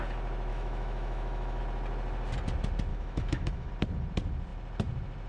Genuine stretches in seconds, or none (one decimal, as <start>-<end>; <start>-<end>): 0.0-0.5; 1.6-2.9; 3.7-5.3